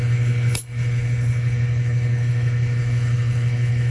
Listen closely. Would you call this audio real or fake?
fake